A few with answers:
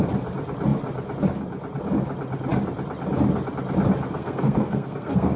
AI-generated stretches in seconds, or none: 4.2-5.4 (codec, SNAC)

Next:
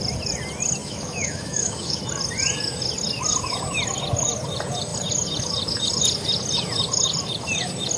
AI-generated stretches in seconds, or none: 0.8-2.0 (autoencoder, DAC-VAE)